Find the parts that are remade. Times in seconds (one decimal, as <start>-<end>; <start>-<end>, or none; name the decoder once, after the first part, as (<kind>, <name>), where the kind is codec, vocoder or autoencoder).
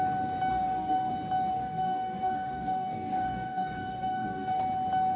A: 0.5-1.1 (codec, DAC); 1.5-4.6